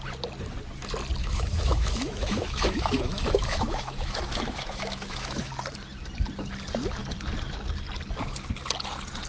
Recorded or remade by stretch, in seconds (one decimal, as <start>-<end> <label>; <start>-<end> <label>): 0.0-1.2 recorded; 1.2-5.5 remade; 5.5-9.3 recorded

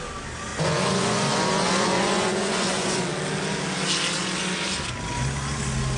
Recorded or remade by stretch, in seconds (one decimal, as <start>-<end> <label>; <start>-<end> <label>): 0.0-0.5 recorded; 0.5-3.0 remade; 3.0-6.0 recorded

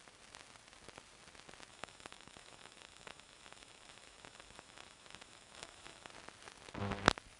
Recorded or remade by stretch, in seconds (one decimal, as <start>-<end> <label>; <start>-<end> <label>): 0.0-1.7 recorded; 1.7-6.1 remade; 6.1-7.4 recorded

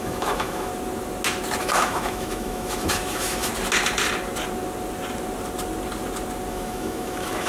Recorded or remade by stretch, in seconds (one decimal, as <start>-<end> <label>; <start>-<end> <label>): 0.0-0.7 remade; 0.7-1.6 recorded; 1.6-3.5 remade; 3.5-6.5 recorded; 6.5-7.5 remade

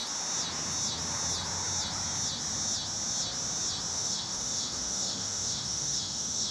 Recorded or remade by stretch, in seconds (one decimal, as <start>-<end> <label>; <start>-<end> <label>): 0.0-3.9 recorded; 3.9-6.5 remade

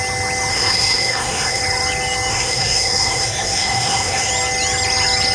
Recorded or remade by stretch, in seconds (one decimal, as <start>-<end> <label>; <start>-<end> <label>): 0.0-0.5 recorded; 0.5-1.6 remade; 1.6-2.3 recorded; 2.3-4.3 remade; 4.3-5.3 recorded

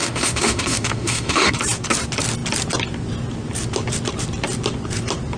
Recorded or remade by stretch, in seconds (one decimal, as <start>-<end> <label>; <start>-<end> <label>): 0.0-1.5 remade; 1.5-5.4 recorded